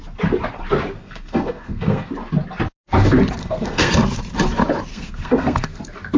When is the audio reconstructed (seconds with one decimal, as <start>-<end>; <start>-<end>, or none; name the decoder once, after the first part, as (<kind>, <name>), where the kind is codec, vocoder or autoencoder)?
1.0-2.1 (codec, SNAC); 3.4-3.9; 4.9-5.8